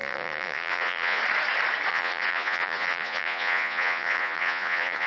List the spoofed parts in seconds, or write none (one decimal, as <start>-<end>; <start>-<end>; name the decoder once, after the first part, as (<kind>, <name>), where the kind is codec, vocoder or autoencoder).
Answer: 0.0-1.2 (vocoder, Vocos); 1.9-5.1